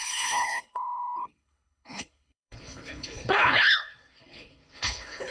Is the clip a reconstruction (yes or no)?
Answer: yes